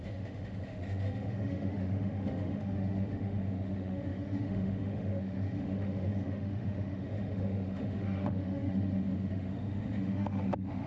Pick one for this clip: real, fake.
fake